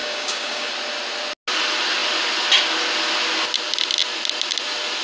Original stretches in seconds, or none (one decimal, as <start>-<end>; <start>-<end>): 0.7-5.0